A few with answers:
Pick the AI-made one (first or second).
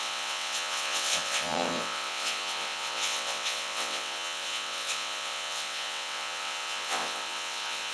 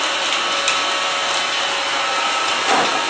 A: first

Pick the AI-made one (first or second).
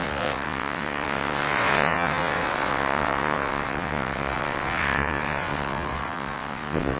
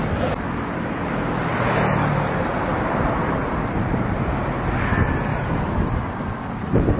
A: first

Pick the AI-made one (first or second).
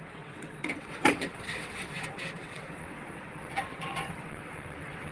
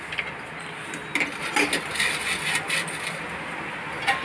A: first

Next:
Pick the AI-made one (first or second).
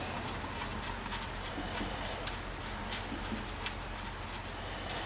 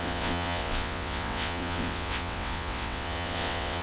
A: second